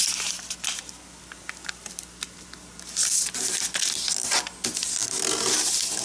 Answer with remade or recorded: recorded